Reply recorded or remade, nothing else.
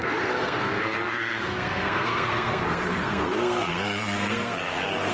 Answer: remade